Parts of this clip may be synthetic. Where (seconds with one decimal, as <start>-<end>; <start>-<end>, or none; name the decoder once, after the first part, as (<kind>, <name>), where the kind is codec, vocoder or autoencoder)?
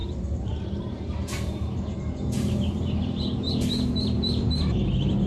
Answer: 0.0-5.3 (vocoder, BigVGAN v2)